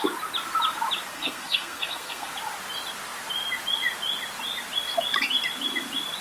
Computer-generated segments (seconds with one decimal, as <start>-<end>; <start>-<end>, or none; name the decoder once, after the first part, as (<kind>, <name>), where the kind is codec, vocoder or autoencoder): 1.1-2.3 (codec, SNAC)